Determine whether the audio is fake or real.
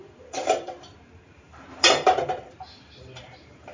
fake